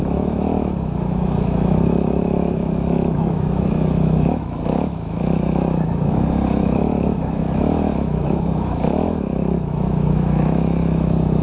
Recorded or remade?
remade